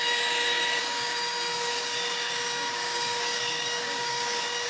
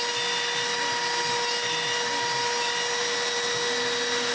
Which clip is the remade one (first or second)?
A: first